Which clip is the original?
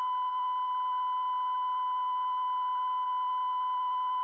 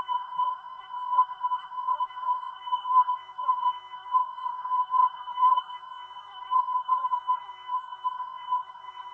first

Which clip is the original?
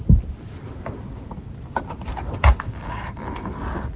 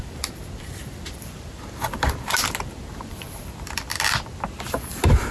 first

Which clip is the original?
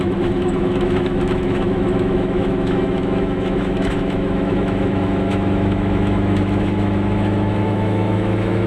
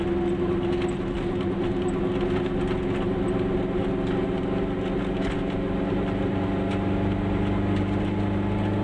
second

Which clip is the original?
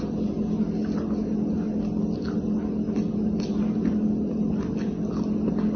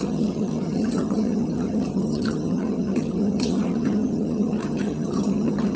first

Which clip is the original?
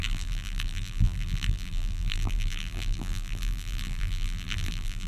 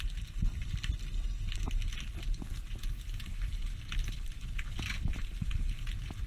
second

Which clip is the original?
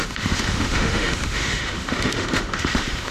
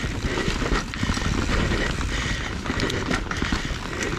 second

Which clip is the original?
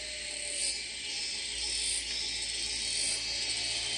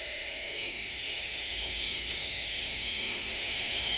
first